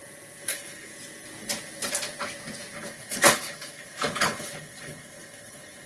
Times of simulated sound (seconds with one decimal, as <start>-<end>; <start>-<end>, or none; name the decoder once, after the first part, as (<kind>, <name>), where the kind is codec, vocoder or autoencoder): 0.5-0.9 (codec, HILCodec); 2.9-5.9